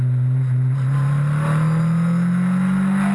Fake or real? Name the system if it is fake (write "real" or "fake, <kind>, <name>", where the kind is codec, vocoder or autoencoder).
real